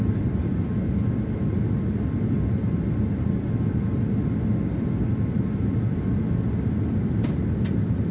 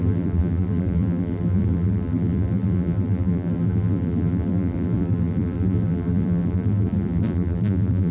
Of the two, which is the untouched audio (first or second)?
first